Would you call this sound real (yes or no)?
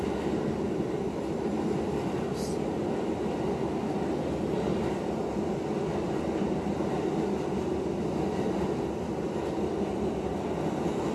yes